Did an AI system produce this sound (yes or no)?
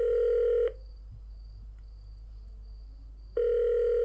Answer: no